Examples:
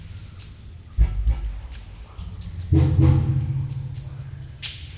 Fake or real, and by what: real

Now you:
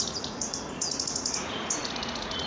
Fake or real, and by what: fake, vocoder, Vocos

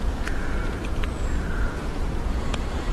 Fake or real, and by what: fake, vocoder, Vocos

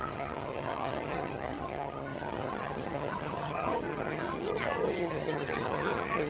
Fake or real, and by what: fake, vocoder, HiFi-GAN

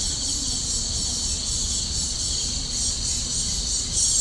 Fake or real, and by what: real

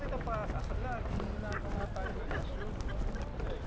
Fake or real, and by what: real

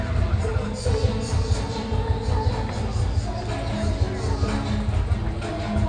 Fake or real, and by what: real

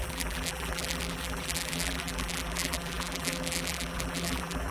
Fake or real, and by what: fake, vocoder, BigVGAN v2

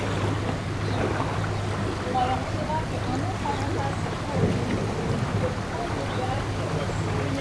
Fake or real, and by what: real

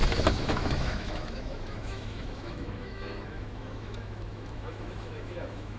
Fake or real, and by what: fake, autoencoder, DAC-VAE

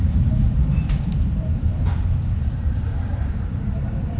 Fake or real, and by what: fake, vocoder, BigVGAN v2